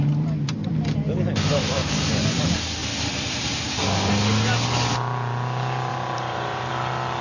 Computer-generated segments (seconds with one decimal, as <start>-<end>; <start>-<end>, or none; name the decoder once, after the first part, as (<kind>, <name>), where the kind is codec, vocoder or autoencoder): 1.8-2.4 (vocoder, BigVGAN v2); 5.9-6.7